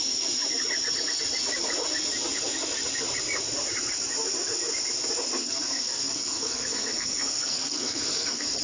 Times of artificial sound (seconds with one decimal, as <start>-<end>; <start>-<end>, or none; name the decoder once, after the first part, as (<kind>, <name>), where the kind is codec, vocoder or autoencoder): 5.4-8.6 (codec, SNAC)